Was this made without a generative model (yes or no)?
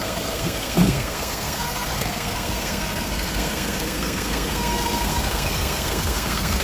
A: no